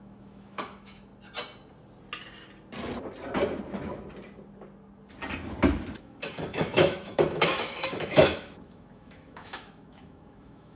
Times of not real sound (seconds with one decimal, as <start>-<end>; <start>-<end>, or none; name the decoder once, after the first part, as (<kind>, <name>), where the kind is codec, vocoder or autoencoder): 0.0-1.1 (autoencoder, DAC-VAE); 6.0-10.8